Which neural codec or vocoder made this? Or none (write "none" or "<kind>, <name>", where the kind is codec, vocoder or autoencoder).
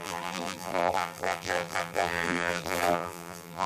vocoder, BigVGAN v2